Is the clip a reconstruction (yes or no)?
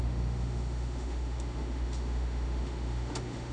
yes